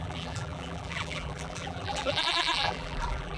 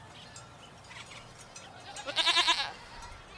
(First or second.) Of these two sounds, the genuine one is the second